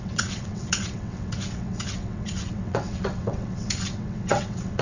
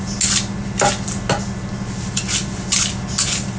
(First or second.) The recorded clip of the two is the second